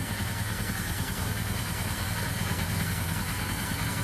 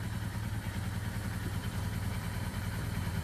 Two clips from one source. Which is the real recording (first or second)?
second